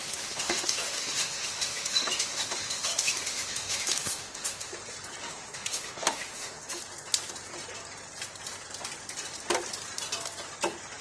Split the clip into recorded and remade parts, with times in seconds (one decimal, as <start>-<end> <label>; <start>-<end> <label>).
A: 0.0-4.7 remade; 4.7-5.2 recorded; 5.2-6.8 remade; 6.8-11.0 recorded